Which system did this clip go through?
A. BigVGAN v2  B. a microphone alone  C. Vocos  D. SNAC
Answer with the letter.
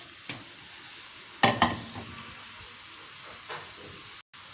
B